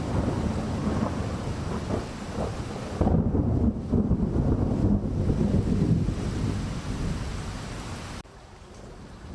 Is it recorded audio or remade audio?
recorded